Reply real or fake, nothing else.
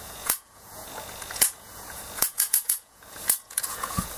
fake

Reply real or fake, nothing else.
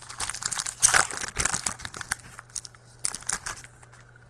real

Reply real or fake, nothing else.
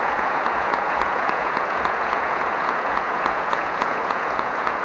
fake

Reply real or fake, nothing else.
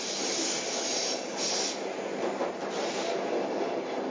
real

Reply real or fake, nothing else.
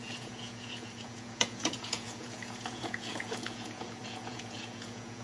fake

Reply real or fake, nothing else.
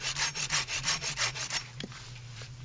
real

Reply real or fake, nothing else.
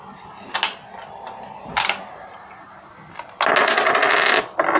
real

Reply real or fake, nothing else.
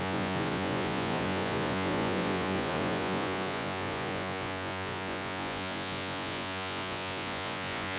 fake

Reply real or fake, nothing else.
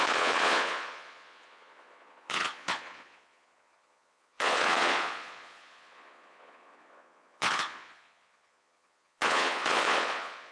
fake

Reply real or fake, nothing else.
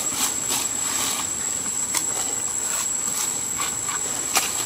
real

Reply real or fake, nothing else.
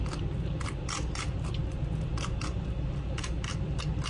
real